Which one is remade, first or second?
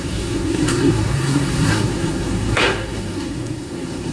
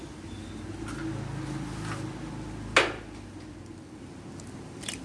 first